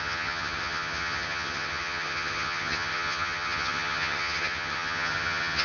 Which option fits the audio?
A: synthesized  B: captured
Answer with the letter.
A